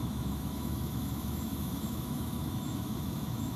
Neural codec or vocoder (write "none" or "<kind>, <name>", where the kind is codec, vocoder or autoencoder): autoencoder, DAC-VAE